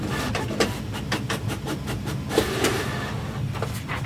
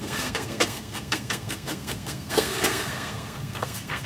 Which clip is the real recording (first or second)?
first